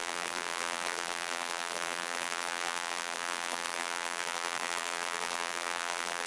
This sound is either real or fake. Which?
fake